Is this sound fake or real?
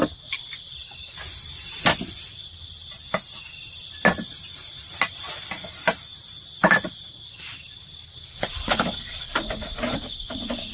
real